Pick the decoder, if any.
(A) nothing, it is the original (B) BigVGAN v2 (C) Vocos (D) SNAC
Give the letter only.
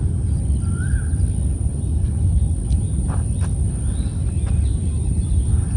A